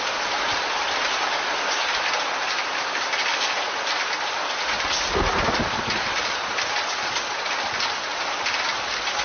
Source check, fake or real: real